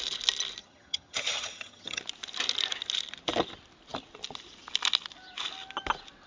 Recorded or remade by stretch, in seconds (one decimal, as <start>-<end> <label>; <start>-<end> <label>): 0.0-0.6 recorded; 0.6-2.0 remade; 2.0-6.3 recorded